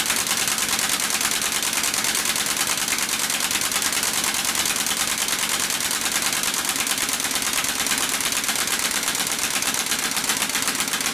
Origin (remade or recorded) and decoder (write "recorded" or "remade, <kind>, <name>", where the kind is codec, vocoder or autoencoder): recorded